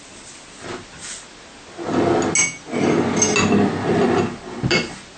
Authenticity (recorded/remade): recorded